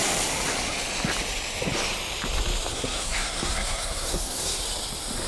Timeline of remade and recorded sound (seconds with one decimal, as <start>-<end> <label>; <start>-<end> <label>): 0.0-2.7 recorded; 2.7-4.6 remade; 4.6-5.3 recorded